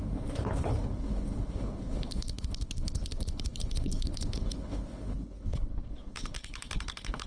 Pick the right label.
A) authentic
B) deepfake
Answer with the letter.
B